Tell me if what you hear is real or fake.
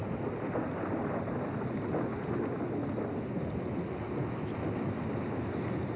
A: real